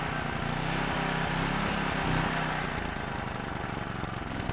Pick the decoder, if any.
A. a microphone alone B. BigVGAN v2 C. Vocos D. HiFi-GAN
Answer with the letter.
A